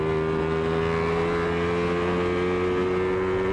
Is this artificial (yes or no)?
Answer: no